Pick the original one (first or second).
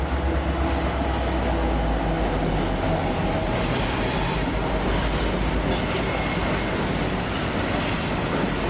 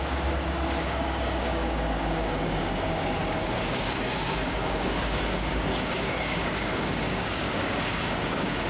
first